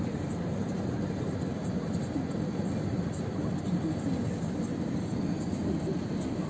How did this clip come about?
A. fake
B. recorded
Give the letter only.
B